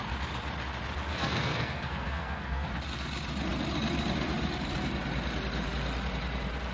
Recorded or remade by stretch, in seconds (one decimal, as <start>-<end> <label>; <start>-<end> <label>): 0.0-1.1 recorded; 1.1-2.7 remade; 2.7-6.7 recorded